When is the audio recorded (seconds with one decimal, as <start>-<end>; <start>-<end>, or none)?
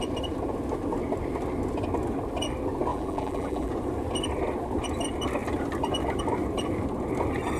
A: 0.0-2.9; 3.7-7.6